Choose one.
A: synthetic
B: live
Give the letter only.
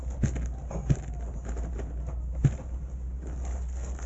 B